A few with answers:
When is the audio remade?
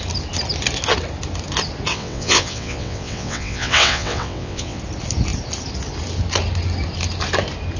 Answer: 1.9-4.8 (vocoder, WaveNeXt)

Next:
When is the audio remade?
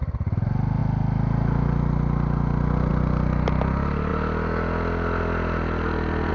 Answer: none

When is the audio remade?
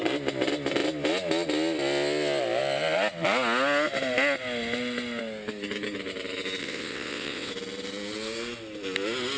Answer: 6.6-7.5 (vocoder, WaveNeXt)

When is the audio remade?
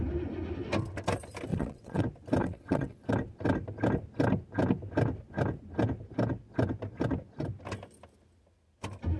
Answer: 1.5-2.0 (vocoder, WaveNeXt); 2.4-3.1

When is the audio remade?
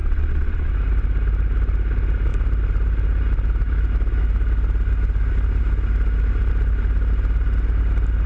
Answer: 0.0-0.7 (vocoder, WaveNeXt)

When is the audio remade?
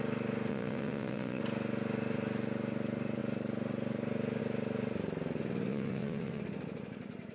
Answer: 0.5-1.4 (vocoder, WaveNeXt); 5.7-6.4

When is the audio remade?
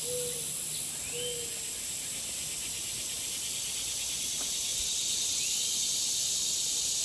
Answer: 4.7-5.4 (vocoder, WaveNeXt)